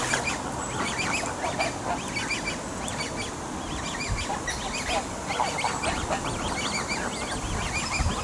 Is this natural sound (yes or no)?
yes